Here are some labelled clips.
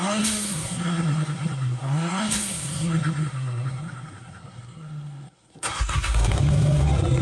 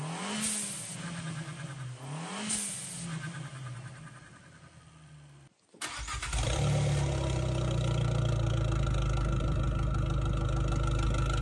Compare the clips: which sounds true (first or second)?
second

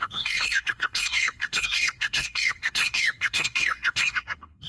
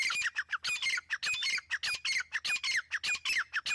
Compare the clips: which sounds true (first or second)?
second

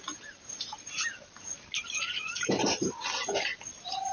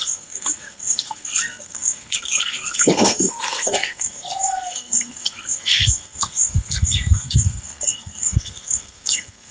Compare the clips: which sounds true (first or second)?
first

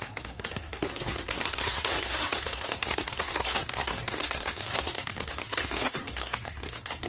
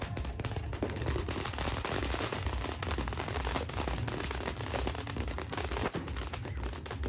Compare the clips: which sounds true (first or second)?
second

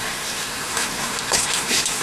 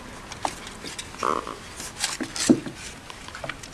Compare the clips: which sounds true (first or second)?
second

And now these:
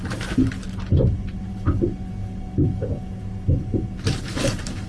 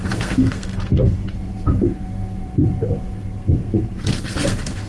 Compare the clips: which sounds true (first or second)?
first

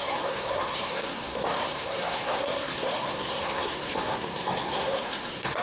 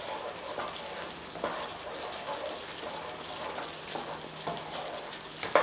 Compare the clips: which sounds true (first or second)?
second